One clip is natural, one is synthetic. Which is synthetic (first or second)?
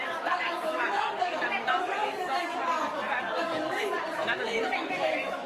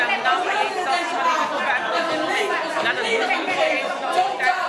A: first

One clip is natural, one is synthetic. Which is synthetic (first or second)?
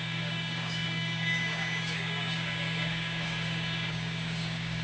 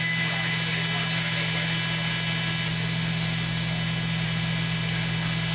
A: first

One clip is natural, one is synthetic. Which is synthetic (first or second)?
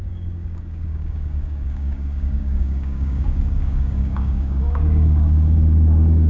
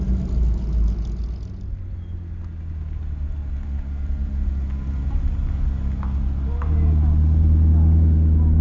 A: first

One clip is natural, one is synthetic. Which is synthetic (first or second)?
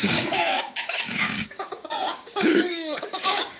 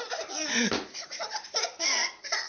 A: first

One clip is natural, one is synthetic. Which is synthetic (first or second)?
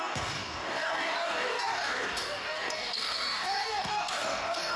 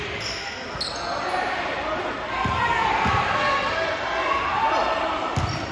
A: first